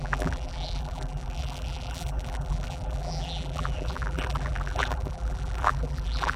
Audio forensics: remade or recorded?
remade